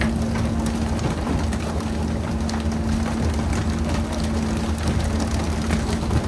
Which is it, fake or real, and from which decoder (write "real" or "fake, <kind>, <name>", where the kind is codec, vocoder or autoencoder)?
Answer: real